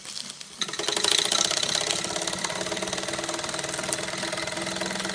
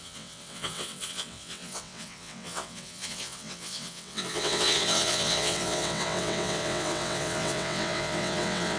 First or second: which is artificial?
second